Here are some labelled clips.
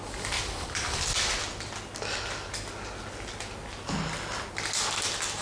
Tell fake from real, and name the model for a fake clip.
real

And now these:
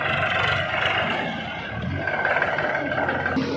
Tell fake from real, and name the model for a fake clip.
real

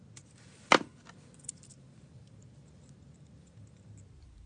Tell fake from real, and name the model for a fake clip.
real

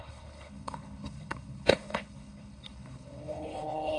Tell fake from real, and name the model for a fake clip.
fake, codec, HILCodec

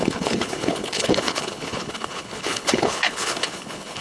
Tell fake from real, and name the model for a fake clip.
fake, codec, HILCodec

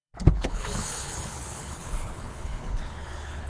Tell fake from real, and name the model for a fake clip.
fake, codec, HILCodec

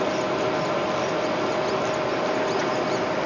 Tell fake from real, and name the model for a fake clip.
real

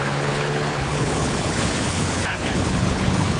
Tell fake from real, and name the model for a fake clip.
fake, codec, HILCodec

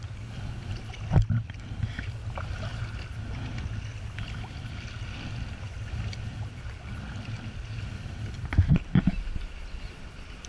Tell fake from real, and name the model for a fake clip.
real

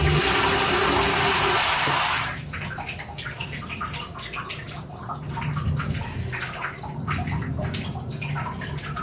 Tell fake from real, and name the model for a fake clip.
real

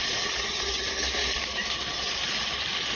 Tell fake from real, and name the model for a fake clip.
real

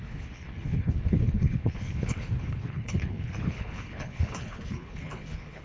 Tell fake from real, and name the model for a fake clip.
fake, codec, HILCodec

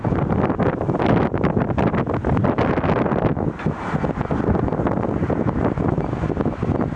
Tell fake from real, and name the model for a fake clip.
real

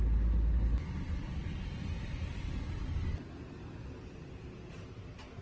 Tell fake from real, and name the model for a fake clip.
real